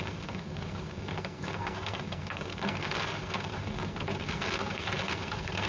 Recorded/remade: remade